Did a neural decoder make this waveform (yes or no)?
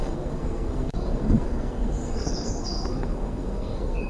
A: yes